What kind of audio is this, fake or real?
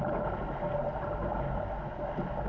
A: real